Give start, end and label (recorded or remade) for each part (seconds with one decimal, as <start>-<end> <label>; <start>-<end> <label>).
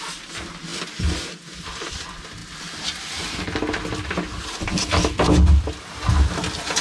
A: 0.0-6.8 recorded